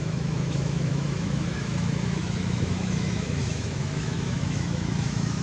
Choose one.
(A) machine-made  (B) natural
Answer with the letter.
A